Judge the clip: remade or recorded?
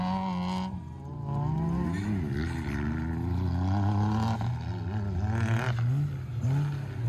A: recorded